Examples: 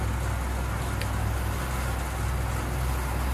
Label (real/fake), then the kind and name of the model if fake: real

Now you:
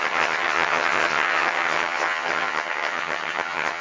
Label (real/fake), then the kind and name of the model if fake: fake, vocoder, HiFi-GAN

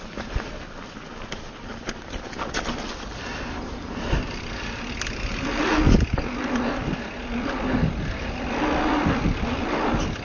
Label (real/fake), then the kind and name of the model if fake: real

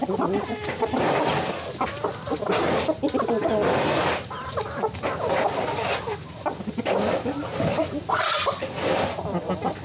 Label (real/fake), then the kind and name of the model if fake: real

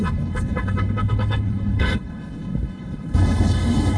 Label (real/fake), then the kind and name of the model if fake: fake, codec, HILCodec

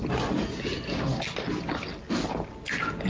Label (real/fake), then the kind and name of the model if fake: real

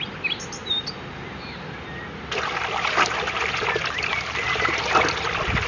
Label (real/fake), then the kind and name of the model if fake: real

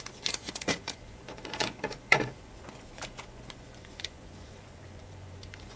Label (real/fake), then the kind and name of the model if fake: fake, vocoder, Vocos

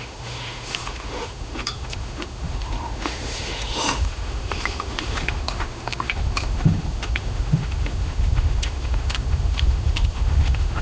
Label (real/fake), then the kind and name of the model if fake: fake, autoencoder, DAC-VAE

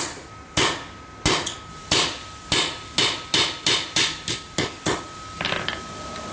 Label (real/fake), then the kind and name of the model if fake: real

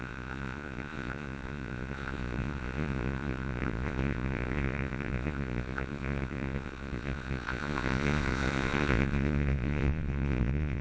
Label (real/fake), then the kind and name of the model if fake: fake, vocoder, Vocos